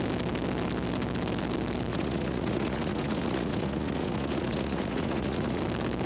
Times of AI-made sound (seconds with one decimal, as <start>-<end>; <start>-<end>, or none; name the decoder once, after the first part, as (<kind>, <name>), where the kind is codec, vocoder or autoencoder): 1.9-5.6 (vocoder, Vocos)